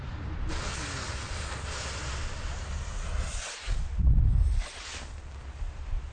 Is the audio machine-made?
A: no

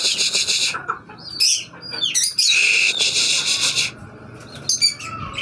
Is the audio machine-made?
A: no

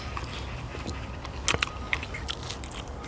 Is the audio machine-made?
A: no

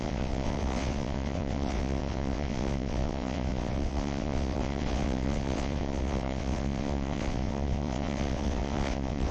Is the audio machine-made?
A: yes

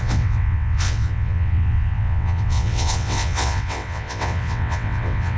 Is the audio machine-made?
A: yes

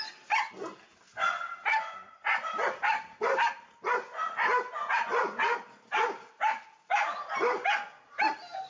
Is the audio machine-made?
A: no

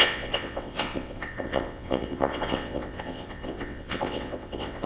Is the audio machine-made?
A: yes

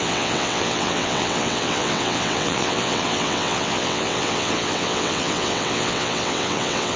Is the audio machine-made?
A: yes